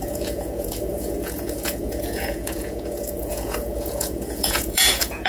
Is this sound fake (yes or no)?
yes